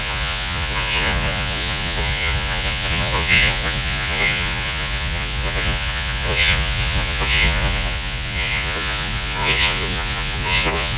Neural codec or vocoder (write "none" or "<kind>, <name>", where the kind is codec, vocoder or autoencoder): vocoder, Vocos